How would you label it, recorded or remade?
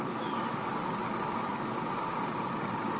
recorded